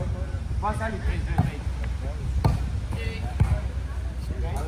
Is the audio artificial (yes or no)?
no